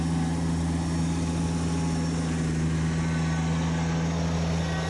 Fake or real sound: real